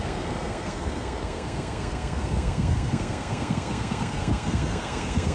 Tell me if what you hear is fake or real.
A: fake